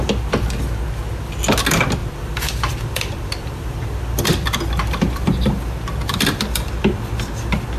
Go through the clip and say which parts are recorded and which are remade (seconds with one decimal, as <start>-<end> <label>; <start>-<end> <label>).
0.0-2.0 recorded; 2.0-6.7 remade; 6.7-7.8 recorded